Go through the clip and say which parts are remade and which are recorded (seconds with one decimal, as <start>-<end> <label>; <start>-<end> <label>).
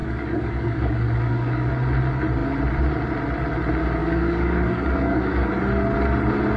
0.0-1.7 remade; 1.7-4.0 recorded; 4.0-5.6 remade; 5.6-6.6 recorded